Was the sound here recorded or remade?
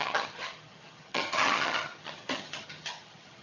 remade